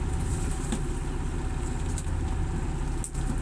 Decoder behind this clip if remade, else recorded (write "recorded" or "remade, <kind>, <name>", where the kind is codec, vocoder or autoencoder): recorded